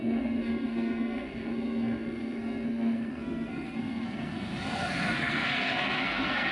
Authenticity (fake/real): fake